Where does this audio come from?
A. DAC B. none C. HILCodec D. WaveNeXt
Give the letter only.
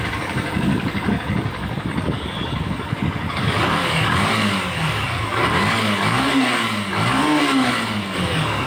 A